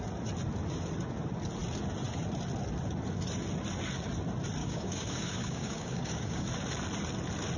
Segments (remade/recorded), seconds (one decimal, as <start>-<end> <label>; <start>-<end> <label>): 0.0-4.6 recorded; 4.6-6.5 remade; 6.5-7.6 recorded